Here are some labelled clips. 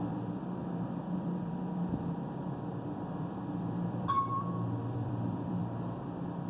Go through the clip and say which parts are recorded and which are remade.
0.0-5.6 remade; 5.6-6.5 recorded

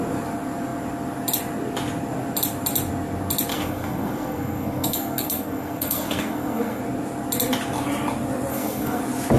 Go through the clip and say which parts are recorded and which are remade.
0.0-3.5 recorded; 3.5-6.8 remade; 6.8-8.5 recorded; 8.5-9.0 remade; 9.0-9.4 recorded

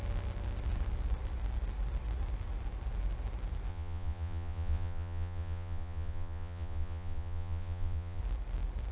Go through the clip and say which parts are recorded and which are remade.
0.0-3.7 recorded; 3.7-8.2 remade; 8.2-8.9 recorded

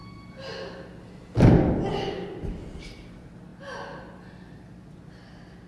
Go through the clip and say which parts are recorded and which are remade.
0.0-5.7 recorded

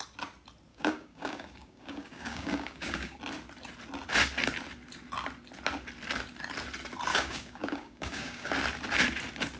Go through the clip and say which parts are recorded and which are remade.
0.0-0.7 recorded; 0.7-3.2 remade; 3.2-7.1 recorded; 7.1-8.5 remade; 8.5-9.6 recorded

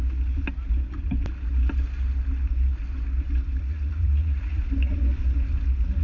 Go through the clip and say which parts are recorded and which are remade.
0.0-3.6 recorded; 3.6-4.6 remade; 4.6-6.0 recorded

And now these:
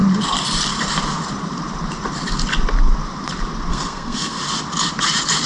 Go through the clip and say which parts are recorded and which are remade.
0.0-3.7 recorded; 3.7-4.4 remade; 4.4-5.5 recorded